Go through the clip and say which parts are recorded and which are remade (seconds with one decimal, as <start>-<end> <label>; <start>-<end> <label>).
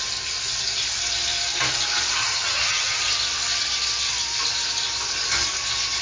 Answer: 0.0-2.2 recorded; 2.2-3.0 remade; 3.0-6.0 recorded